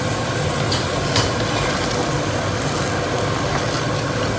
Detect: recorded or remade recorded